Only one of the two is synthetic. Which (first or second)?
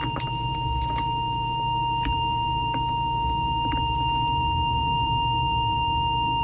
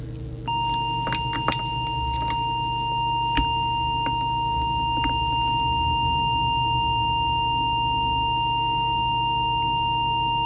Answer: first